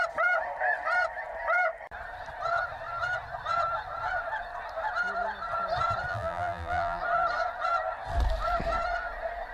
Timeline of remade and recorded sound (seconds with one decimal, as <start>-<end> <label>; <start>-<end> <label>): 0.0-6.1 recorded; 6.1-7.0 remade; 7.0-9.5 recorded